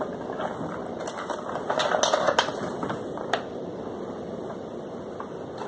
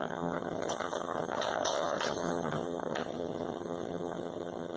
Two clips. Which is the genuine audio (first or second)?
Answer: first